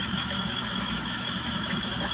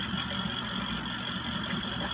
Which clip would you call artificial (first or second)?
first